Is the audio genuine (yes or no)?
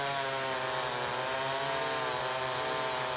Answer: yes